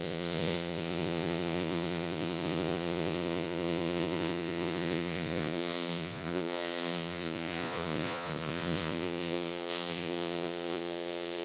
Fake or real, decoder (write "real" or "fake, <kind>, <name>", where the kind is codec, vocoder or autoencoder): fake, vocoder, Vocos